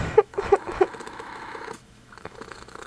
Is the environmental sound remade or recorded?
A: remade